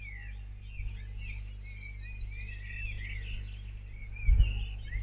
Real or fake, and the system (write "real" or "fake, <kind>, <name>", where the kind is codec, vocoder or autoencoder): real